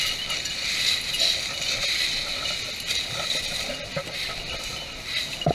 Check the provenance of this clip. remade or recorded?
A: recorded